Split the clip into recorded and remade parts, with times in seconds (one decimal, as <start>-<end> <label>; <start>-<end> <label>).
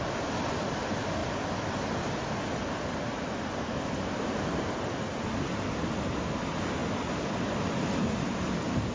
0.0-8.9 recorded